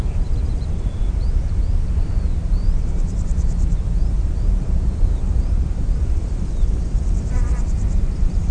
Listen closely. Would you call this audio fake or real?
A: fake